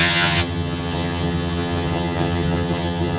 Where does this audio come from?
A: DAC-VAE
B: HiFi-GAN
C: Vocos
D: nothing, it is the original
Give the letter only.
B